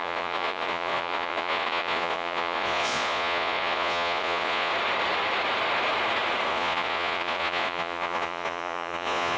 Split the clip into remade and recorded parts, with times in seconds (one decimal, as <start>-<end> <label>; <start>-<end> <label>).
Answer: 0.0-4.7 remade; 4.7-6.5 recorded; 6.5-9.4 remade